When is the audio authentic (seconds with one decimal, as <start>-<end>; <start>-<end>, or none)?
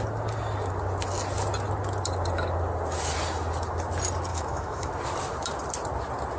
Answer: 0.0-4.3; 4.9-6.4